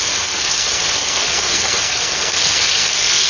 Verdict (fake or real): fake